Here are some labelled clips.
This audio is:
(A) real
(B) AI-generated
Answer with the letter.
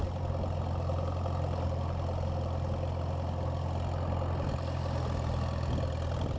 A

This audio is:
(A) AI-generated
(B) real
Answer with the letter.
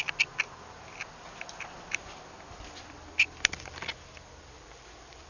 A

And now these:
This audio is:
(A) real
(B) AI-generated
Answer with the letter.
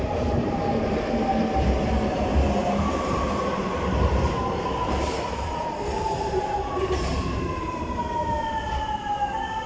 B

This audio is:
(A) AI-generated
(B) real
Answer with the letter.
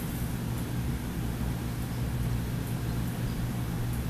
B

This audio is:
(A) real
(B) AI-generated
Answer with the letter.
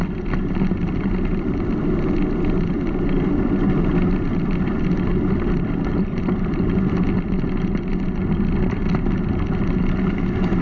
A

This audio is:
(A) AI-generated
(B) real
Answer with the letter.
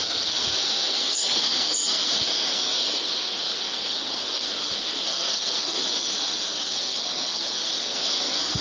A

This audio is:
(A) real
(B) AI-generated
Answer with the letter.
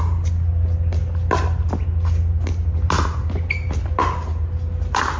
A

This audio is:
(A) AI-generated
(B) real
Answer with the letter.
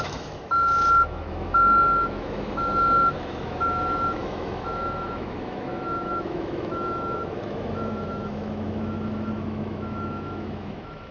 A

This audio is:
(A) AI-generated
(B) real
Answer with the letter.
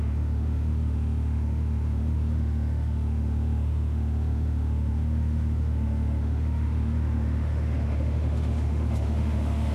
A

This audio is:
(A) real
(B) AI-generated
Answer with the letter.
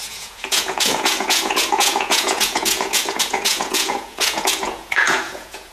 B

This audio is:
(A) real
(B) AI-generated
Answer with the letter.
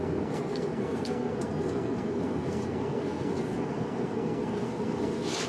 B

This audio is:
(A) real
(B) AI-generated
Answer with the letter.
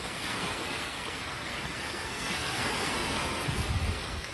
B